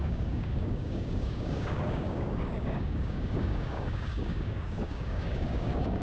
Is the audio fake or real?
fake